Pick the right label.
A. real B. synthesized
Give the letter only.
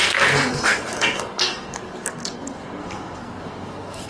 B